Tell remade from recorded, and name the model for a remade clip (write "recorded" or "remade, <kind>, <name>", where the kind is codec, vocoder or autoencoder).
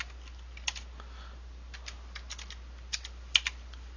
recorded